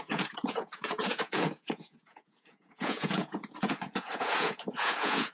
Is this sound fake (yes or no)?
yes